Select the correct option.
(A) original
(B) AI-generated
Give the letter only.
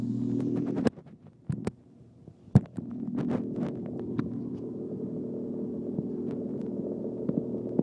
B